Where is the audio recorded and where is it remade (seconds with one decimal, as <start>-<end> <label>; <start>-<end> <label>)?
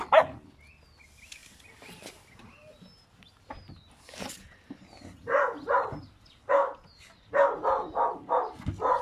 0.0-9.0 recorded